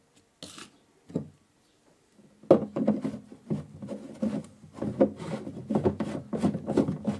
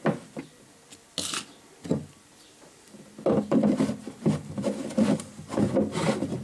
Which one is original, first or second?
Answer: first